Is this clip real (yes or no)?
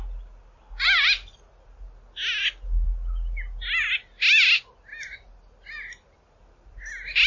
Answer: yes